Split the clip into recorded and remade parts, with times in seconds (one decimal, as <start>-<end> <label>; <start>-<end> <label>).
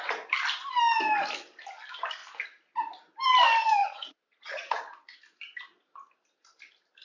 0.0-3.8 recorded; 3.8-4.8 remade; 4.8-7.0 recorded